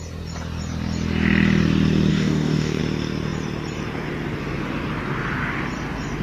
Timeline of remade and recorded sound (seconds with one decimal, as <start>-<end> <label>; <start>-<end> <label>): 0.0-2.1 recorded; 2.1-2.8 remade; 2.8-6.2 recorded